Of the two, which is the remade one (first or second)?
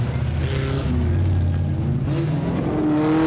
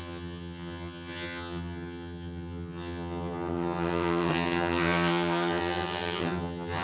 second